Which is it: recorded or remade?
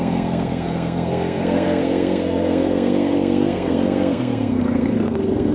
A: remade